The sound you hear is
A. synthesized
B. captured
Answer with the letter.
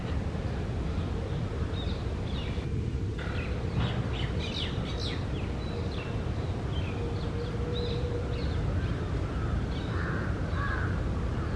B